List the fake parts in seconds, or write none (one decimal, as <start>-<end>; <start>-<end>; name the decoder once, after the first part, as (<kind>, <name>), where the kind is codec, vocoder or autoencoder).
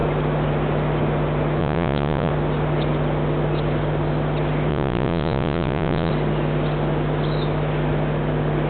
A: 1.6-2.3 (vocoder, Vocos); 4.7-6.1